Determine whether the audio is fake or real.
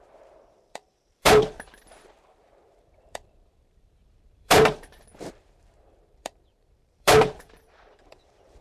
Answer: fake